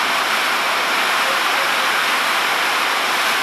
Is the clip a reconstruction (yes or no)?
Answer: no